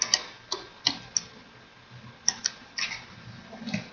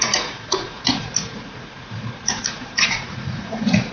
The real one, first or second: first